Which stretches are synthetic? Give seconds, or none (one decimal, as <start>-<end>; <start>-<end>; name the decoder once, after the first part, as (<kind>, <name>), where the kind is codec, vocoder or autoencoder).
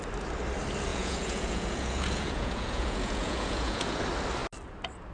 0.9-4.0 (vocoder, Vocos)